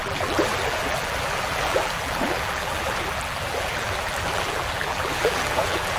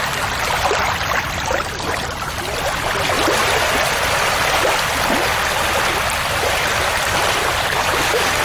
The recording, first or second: second